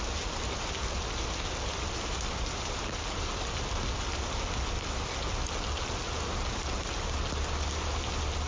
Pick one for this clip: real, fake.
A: real